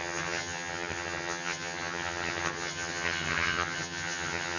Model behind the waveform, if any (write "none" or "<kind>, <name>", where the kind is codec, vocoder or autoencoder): vocoder, HiFi-GAN